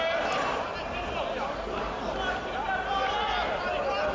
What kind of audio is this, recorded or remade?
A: recorded